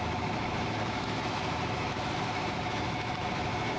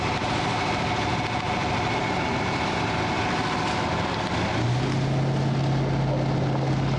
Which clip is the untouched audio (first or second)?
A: second